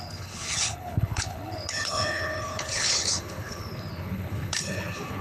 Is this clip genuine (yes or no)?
no